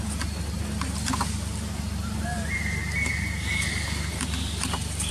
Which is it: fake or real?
real